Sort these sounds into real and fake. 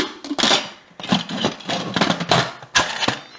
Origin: real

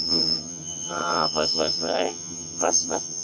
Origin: fake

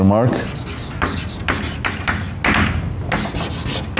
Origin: real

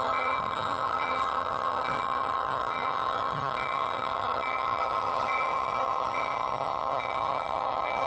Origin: fake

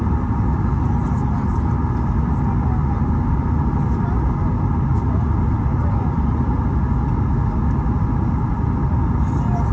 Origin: real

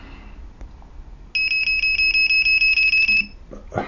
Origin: real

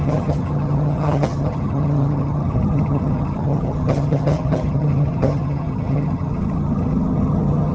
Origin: fake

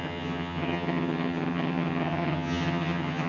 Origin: fake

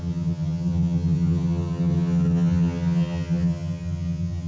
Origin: fake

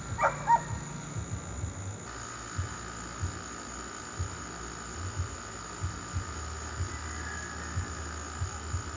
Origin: real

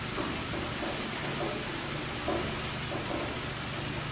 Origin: real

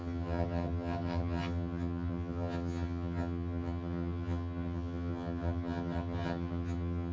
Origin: fake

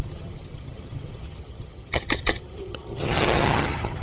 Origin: fake